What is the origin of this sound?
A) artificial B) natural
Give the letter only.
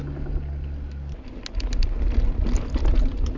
B